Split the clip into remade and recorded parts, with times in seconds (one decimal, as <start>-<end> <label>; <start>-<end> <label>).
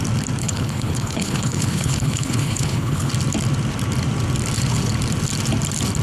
0.0-0.4 recorded; 0.4-3.1 remade; 3.1-6.0 recorded